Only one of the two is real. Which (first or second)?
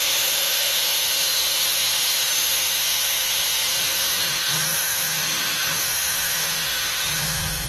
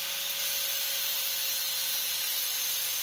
second